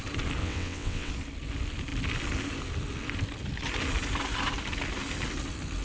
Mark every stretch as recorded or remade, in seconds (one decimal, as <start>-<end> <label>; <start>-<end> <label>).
0.0-0.4 recorded; 0.4-1.1 remade; 1.1-5.8 recorded